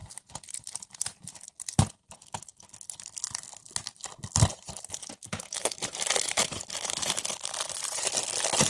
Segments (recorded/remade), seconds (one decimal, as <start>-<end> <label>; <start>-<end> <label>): 0.0-4.5 recorded; 4.5-8.1 remade; 8.1-8.7 recorded